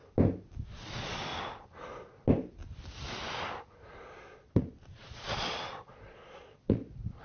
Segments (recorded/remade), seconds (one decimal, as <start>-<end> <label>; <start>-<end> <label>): 0.0-0.7 recorded; 0.7-1.3 remade; 1.3-4.5 recorded; 4.5-7.2 remade